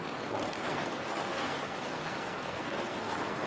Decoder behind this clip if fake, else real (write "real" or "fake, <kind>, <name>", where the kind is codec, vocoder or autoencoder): fake, codec, SNAC